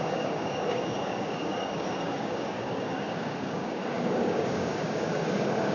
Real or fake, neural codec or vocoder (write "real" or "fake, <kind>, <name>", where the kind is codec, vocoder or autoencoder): fake, codec, DAC